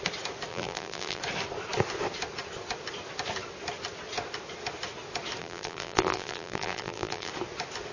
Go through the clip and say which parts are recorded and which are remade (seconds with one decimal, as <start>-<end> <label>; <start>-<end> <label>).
0.0-0.5 recorded; 0.5-1.2 remade; 1.2-5.4 recorded; 5.4-7.3 remade; 7.3-7.9 recorded